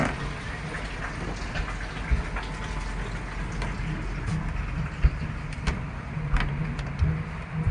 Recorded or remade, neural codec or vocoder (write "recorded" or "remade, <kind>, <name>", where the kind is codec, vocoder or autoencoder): recorded